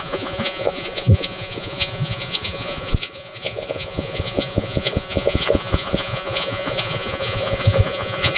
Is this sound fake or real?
fake